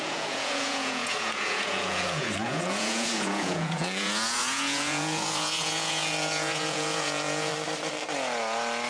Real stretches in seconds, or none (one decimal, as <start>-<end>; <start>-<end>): 7.5-8.9

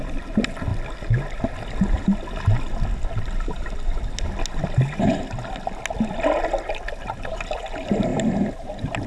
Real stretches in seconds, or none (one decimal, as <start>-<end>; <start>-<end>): 0.0-9.1

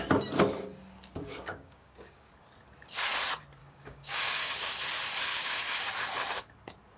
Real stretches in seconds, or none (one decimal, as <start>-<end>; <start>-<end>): 0.0-1.2; 2.3-3.6; 4.7-5.3; 5.9-7.0

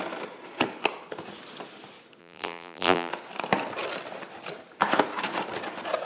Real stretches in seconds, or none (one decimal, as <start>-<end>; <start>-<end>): 0.0-2.2; 3.1-6.0

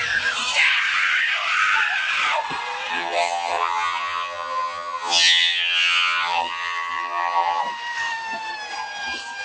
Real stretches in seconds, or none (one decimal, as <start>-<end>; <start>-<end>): 0.0-2.9; 7.6-9.4

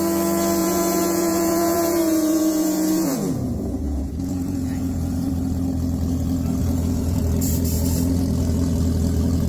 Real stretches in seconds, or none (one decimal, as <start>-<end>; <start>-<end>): 0.0-0.6; 5.3-6.6; 7.2-9.5